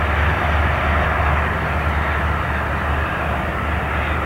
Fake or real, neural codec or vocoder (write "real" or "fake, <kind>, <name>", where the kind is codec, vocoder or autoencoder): real